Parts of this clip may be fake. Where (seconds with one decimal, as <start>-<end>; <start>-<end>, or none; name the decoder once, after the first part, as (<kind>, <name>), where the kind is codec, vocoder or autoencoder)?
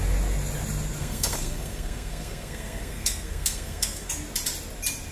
1.0-4.1 (codec, SNAC)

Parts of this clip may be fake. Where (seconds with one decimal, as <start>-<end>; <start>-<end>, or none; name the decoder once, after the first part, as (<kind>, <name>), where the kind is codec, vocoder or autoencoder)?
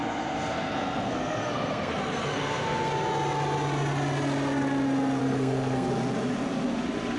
0.0-2.9 (codec, SNAC); 5.2-5.9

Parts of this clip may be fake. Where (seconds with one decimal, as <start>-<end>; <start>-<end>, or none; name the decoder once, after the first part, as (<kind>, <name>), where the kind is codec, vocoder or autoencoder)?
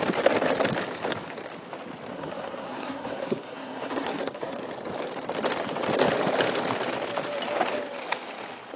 2.1-4.6 (codec, SNAC)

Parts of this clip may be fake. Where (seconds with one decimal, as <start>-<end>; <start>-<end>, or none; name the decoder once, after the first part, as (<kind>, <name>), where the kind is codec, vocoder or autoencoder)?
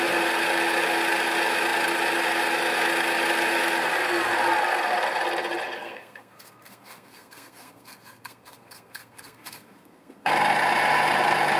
5.8-10.3 (codec, SNAC)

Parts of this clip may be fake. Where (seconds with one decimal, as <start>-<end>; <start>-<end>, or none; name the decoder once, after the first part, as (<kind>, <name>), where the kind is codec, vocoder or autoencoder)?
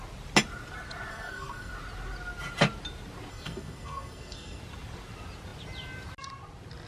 1.1-1.7 (codec, SNAC); 3.3-4.6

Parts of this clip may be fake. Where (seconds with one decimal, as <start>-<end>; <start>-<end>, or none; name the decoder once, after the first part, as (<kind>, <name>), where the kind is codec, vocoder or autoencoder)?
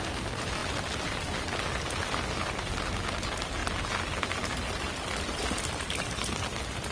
none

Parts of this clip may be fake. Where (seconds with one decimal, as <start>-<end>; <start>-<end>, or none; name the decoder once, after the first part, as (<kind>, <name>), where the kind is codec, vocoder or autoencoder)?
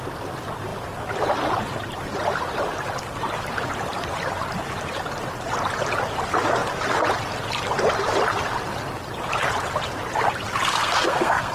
10.7-11.5 (codec, SNAC)